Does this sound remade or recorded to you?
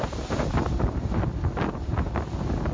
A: recorded